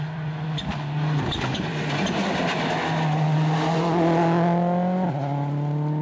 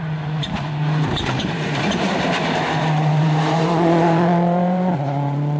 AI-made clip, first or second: second